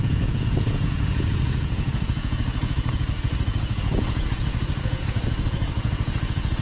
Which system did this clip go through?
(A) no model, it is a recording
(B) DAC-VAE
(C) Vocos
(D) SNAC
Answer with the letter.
C